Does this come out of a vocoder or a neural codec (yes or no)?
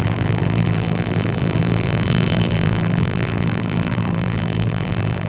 yes